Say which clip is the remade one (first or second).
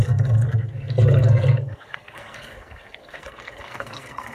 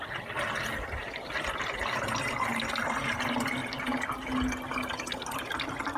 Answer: first